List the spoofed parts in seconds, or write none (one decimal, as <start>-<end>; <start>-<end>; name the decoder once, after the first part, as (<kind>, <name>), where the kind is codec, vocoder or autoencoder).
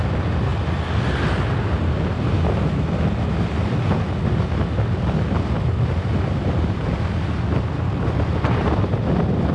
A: none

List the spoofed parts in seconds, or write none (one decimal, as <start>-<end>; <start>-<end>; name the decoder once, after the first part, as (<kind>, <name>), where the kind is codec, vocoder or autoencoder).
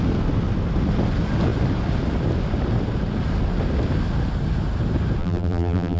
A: 5.2-6.0 (vocoder, BigVGAN v2)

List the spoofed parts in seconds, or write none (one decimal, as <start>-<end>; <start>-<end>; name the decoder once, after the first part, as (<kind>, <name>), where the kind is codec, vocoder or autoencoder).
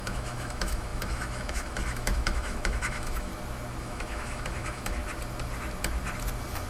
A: 0.0-3.3 (autoencoder, DAC-VAE); 3.8-5.0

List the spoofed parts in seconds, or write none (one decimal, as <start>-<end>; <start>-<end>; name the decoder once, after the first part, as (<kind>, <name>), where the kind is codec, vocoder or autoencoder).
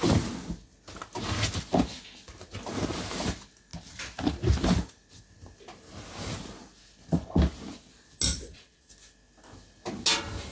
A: 8.3-8.9 (vocoder, Vocos)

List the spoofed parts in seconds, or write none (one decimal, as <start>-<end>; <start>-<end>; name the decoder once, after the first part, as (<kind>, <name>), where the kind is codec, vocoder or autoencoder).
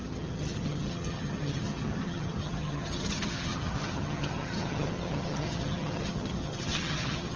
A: 0.0-7.4 (vocoder, HiFi-GAN)